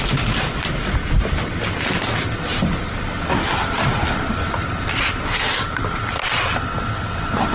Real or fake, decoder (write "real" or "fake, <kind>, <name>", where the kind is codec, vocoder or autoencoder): real